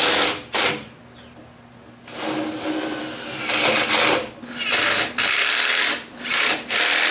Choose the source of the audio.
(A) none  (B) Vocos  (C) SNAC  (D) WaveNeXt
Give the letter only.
A